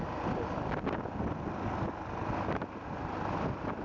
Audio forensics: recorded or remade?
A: recorded